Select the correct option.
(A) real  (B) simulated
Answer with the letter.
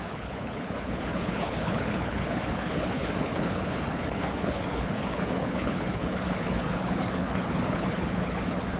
B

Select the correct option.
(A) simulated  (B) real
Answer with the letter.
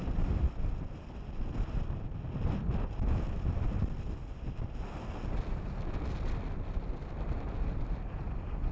B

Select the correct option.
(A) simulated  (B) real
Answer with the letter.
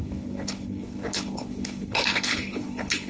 A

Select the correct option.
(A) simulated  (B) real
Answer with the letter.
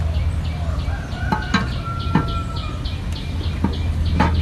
B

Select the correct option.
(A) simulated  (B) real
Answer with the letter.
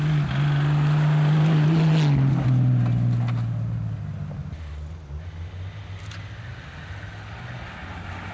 B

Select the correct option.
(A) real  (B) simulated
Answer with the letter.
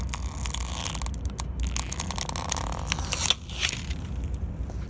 A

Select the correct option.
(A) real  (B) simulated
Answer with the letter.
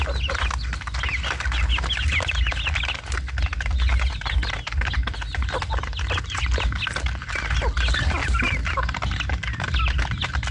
A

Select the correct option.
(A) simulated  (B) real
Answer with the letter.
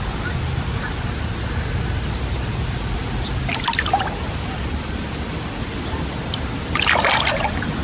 B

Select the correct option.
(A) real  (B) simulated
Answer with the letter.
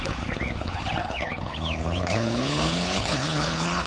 B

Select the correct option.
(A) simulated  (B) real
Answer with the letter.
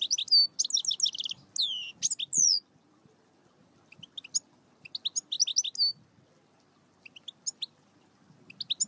B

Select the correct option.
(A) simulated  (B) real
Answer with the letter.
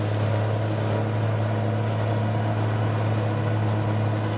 B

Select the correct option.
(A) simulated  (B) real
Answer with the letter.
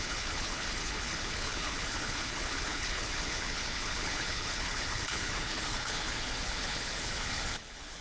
A